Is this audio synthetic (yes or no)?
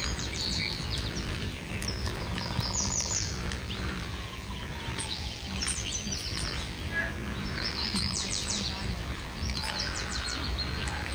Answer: yes